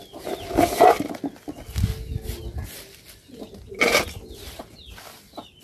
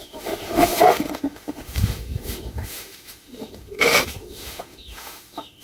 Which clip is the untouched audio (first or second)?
first